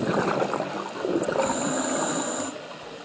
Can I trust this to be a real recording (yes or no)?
yes